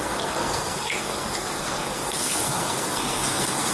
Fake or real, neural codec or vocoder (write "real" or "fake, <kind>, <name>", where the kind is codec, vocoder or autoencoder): fake, codec, SNAC